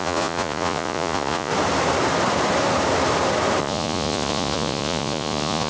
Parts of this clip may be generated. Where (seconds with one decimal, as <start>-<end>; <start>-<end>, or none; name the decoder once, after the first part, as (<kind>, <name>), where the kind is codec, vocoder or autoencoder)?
0.0-1.5 (vocoder, Vocos); 3.6-5.7